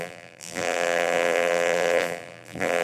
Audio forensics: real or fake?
fake